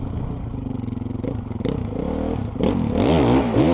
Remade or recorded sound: recorded